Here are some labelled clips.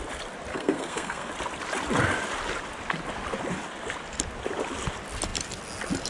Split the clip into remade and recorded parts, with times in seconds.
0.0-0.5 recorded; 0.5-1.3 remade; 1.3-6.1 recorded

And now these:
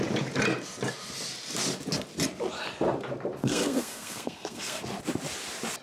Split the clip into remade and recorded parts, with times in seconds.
0.0-3.4 recorded; 3.4-4.8 remade; 4.8-5.8 recorded

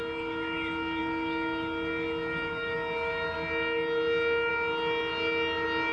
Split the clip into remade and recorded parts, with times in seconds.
0.0-5.9 recorded

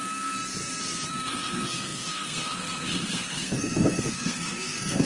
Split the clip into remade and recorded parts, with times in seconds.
0.0-0.4 remade; 0.4-1.1 recorded; 1.1-5.1 remade

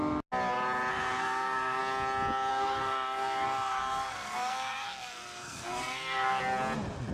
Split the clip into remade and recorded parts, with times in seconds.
0.0-0.9 recorded; 0.9-1.8 remade; 1.8-2.5 recorded; 2.5-6.4 remade; 6.4-7.1 recorded

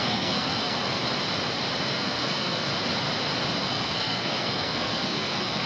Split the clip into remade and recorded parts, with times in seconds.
0.0-1.0 remade; 1.0-1.9 recorded; 1.9-2.7 remade; 2.7-3.6 recorded; 3.6-5.7 remade